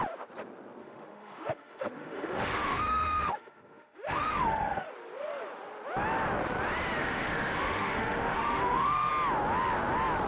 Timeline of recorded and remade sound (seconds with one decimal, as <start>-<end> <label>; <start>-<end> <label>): 0.0-0.8 recorded; 0.8-4.9 remade; 4.9-7.0 recorded; 7.0-9.1 remade; 9.1-10.3 recorded